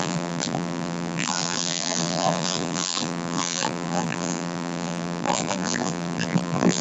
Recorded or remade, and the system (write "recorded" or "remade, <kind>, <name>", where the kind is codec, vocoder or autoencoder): remade, vocoder, BigVGAN v2